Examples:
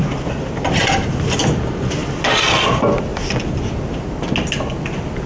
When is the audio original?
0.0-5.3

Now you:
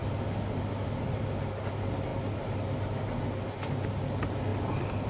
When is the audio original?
0.0-5.1

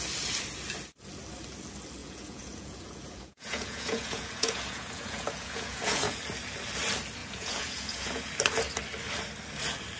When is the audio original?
0.0-2.0; 6.2-7.2; 8.3-10.0

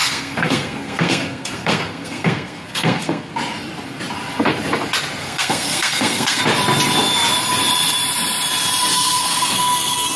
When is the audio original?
3.3-5.2; 6.4-8.9

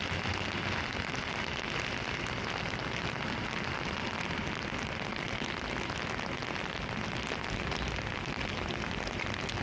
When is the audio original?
0.0-9.6